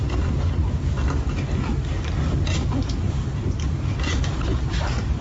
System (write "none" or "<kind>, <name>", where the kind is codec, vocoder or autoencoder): none